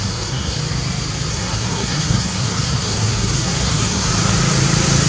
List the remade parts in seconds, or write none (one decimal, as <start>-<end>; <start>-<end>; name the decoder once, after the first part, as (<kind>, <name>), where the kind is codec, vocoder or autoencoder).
0.0-0.6 (codec, SNAC); 1.3-4.1